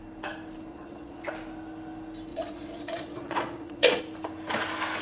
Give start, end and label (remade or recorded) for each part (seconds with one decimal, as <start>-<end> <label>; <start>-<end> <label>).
0.0-0.7 recorded; 0.7-1.3 remade; 1.3-2.3 recorded; 2.3-4.0 remade; 4.0-5.0 recorded